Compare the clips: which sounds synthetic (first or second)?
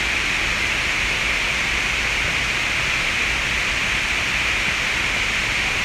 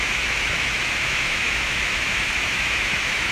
second